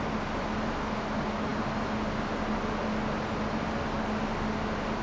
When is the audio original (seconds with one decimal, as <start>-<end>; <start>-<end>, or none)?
0.0-5.0